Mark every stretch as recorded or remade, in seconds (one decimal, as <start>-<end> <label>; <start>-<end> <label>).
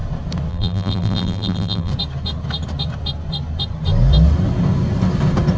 0.0-0.5 recorded; 0.5-1.9 remade; 1.9-5.6 recorded